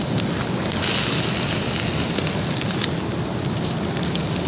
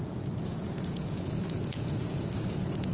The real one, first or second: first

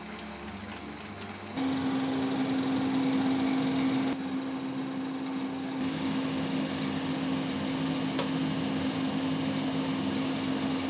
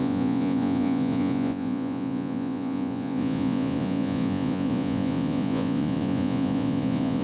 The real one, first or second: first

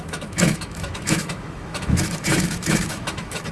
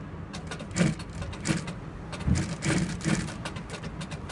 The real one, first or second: second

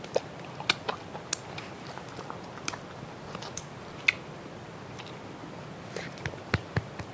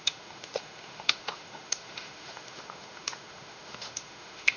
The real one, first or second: first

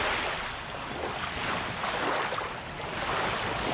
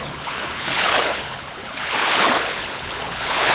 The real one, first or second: first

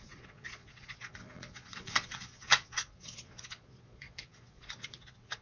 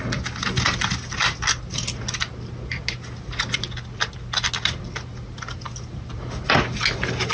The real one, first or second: second